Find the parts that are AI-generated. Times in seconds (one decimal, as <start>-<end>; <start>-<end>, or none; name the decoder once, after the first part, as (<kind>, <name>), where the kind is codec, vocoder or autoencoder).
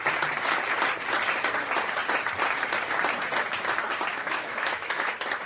4.1-5.1 (autoencoder, DAC-VAE)